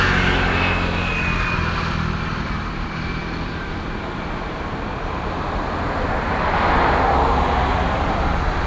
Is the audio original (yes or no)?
yes